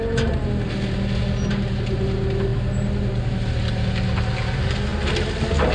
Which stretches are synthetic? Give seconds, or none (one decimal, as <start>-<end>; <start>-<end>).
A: none